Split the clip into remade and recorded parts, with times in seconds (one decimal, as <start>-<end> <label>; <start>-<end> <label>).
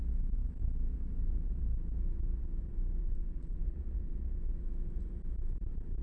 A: 0.0-3.0 recorded; 3.0-4.4 remade; 4.4-6.0 recorded